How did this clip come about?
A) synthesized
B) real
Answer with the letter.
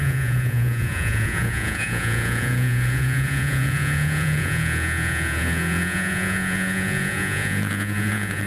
A